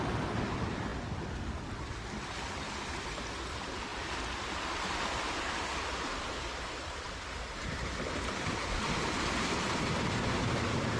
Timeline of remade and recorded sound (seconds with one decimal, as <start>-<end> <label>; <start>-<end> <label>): 0.0-11.0 recorded